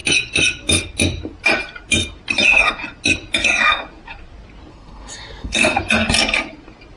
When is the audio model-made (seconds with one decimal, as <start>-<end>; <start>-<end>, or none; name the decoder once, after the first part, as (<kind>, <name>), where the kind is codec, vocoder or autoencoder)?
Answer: 4.7-5.8 (codec, SNAC)